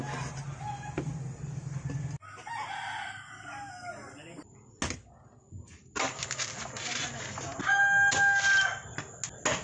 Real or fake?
real